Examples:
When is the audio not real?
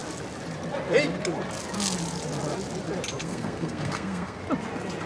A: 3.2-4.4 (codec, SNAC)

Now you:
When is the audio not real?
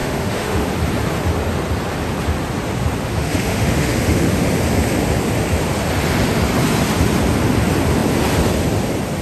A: 0.0-0.7 (autoencoder, DAC-VAE); 3.0-4.5